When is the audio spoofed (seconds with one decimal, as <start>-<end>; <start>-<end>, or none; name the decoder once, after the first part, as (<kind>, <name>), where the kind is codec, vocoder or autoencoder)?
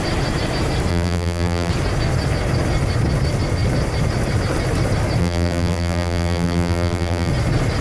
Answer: 0.9-1.7 (vocoder, BigVGAN v2); 5.2-7.3